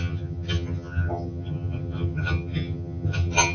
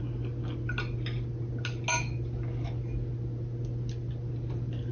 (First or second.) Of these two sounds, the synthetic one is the first